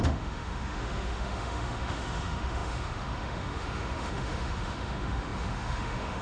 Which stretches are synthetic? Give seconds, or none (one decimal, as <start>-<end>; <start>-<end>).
0.0-6.2